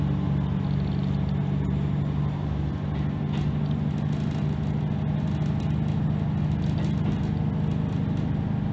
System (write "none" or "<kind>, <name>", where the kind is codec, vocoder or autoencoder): none